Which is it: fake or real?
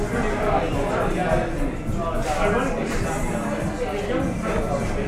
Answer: real